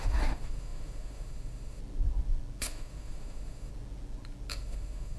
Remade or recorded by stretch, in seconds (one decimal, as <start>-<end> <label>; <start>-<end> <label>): 0.0-1.8 remade; 1.8-2.6 recorded; 2.6-3.7 remade; 3.7-4.5 recorded; 4.5-5.2 remade